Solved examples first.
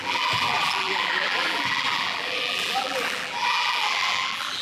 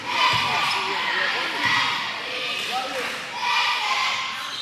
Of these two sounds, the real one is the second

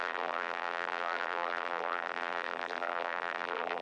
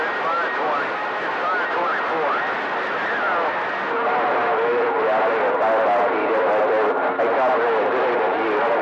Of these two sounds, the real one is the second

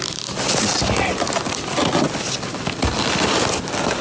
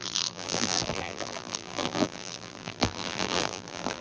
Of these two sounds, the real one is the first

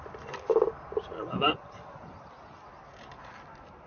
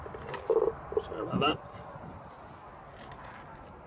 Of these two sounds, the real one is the second